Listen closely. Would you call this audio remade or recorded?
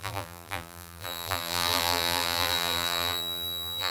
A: remade